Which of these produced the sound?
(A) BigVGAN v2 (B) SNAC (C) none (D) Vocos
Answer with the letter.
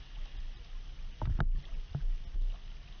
C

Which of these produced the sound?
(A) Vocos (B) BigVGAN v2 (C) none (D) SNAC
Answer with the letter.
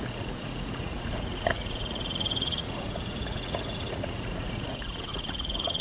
A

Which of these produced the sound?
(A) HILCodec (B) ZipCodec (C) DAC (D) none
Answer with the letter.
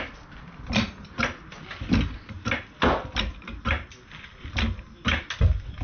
D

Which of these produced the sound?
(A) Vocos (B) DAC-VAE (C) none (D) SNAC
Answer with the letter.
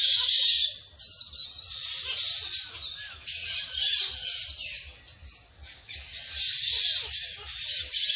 C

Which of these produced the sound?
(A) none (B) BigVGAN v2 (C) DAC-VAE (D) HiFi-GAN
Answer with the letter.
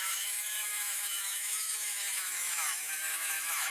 C